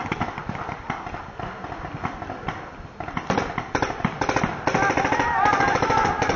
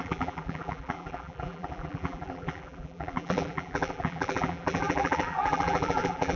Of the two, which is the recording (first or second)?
first